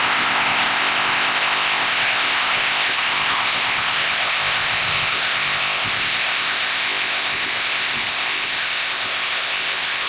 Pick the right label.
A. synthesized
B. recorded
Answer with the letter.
A